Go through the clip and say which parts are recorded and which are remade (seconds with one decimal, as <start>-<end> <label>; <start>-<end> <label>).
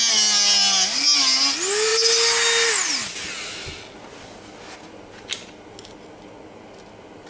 0.0-7.3 recorded